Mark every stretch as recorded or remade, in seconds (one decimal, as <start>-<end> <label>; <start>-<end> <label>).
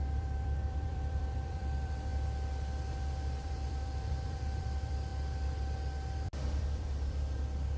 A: 0.0-2.1 remade; 2.1-3.4 recorded; 3.4-5.1 remade; 5.1-6.6 recorded; 6.6-7.8 remade